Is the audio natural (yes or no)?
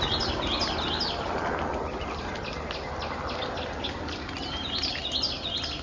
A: yes